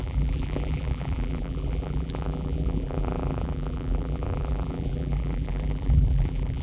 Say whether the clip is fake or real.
fake